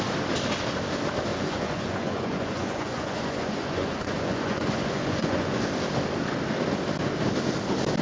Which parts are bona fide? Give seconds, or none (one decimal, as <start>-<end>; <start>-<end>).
0.0-1.3; 5.6-8.0